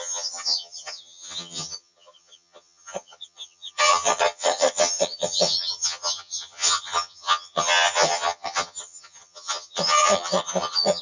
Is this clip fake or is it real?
fake